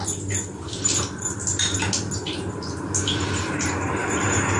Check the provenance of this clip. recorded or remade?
recorded